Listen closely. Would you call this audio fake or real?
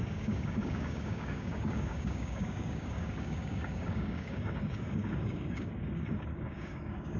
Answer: fake